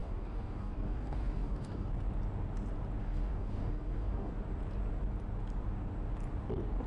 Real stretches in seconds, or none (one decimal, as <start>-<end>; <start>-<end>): 1.9-3.0; 4.3-6.9